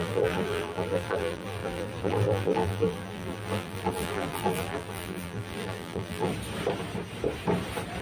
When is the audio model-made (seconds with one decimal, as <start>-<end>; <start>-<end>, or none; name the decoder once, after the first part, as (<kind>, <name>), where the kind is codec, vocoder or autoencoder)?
0.0-6.3 (vocoder, BigVGAN v2)